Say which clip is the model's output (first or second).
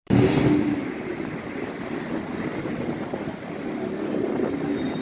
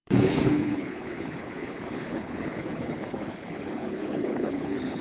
second